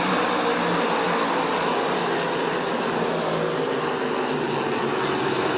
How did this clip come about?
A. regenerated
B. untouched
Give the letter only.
B